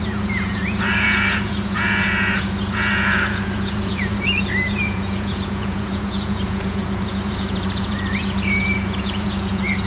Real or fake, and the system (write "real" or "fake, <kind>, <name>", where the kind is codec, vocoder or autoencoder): fake, vocoder, Vocos